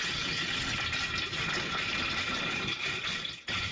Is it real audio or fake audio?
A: real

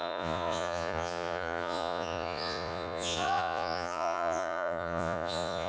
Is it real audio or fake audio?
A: fake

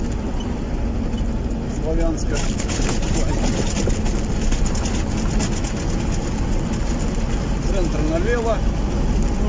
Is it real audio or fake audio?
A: real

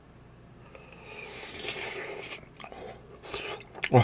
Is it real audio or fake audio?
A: real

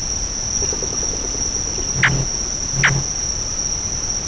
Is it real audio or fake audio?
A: real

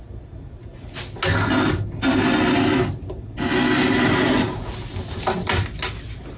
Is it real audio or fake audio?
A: real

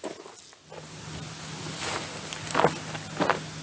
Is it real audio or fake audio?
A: real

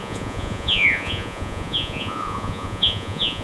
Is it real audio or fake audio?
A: fake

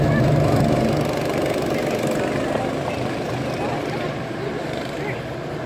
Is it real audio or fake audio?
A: real